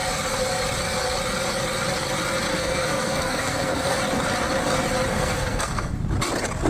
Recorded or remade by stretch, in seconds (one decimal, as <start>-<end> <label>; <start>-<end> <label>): 0.0-2.5 recorded; 2.5-4.0 remade; 4.0-5.1 recorded; 5.1-6.0 remade; 6.0-6.7 recorded